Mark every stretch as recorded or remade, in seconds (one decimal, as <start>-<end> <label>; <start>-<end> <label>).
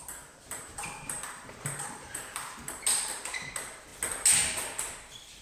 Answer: 0.0-3.2 remade; 3.2-5.4 recorded